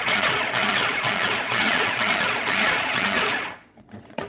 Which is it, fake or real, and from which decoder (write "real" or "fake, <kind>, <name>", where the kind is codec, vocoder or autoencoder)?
fake, vocoder, Vocos